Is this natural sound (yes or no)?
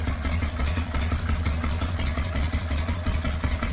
no